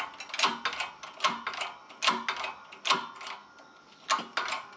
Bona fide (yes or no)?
yes